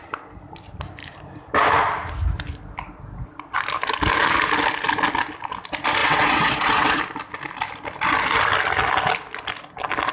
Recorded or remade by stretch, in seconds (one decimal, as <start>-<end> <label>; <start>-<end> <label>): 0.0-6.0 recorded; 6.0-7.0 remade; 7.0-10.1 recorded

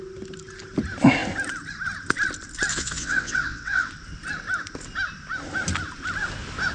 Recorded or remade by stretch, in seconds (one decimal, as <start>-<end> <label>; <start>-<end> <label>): 0.0-2.7 recorded; 2.7-3.9 remade; 3.9-6.7 recorded

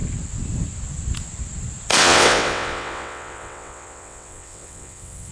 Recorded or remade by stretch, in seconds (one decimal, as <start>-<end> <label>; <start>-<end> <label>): 0.0-2.0 recorded; 2.0-5.3 remade

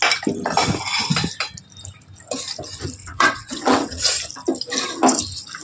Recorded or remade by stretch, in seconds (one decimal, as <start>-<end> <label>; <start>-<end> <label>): 0.0-3.0 recorded; 3.0-4.1 remade; 4.1-5.6 recorded

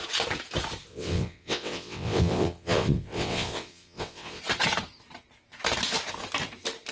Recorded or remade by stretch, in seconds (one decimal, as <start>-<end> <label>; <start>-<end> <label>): 0.0-0.9 recorded; 0.9-4.4 remade; 4.4-6.9 recorded

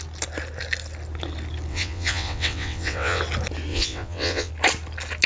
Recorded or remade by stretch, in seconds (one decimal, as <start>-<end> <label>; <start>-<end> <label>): 0.0-1.7 recorded; 1.7-3.2 remade; 3.2-3.7 recorded; 3.7-4.5 remade; 4.5-5.3 recorded